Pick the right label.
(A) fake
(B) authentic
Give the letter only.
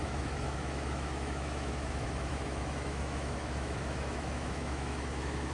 A